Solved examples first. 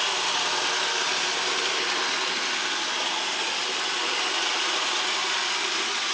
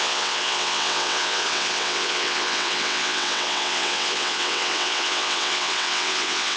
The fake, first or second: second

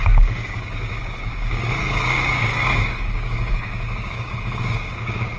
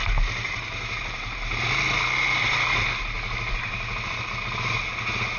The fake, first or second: first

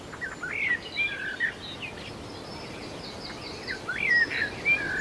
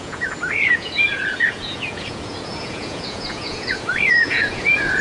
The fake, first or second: second